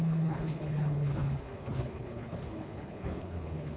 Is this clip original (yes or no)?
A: no